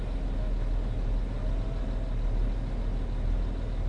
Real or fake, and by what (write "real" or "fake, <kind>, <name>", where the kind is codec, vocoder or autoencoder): real